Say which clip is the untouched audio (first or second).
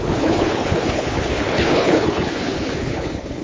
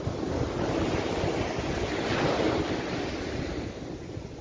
second